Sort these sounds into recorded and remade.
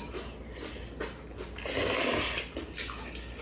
recorded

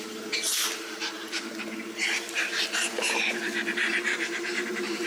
remade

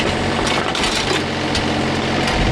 recorded